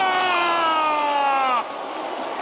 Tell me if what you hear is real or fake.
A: real